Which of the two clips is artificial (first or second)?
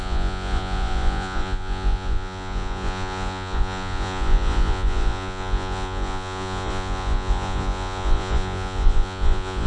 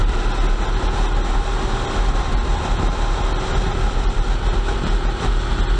first